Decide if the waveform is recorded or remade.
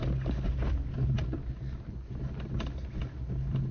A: recorded